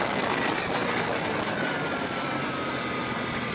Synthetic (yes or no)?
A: no